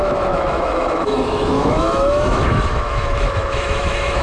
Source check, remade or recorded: remade